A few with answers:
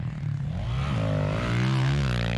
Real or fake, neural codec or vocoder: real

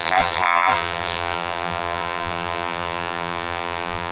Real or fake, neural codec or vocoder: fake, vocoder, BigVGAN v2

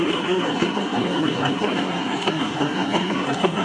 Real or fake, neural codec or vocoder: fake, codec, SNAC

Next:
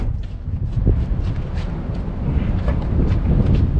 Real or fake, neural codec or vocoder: real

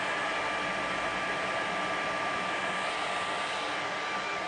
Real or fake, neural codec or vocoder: real